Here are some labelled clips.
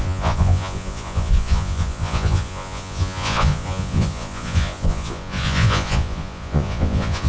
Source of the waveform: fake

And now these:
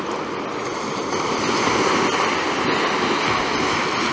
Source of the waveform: real